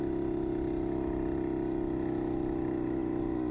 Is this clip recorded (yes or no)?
yes